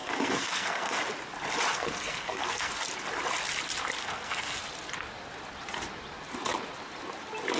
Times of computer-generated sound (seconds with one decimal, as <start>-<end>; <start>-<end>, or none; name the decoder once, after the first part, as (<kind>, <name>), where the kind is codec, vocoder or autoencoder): 0.0-1.0 (codec, SNAC); 1.7-2.7; 4.0-4.6